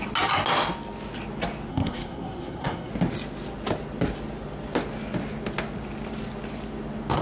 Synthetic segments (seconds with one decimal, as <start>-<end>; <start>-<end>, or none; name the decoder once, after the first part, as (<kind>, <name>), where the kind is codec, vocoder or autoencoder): 1.7-2.9 (codec, SNAC)